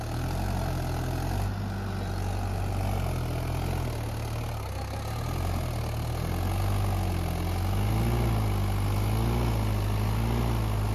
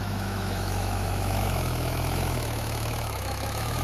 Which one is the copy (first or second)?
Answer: second